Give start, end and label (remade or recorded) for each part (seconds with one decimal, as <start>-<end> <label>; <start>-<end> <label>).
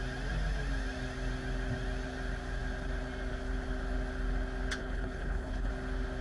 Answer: 0.0-4.8 recorded; 4.8-5.7 remade; 5.7-6.2 recorded